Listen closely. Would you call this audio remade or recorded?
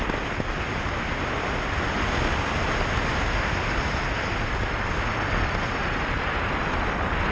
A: recorded